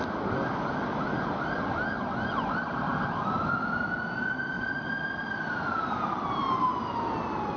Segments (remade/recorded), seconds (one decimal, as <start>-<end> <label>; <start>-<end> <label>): 0.0-7.6 recorded